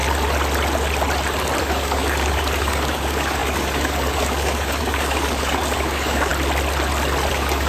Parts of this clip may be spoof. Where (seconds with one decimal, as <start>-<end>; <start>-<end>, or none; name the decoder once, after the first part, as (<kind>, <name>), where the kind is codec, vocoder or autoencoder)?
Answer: 1.6-6.3 (codec, DAC); 7.3-7.7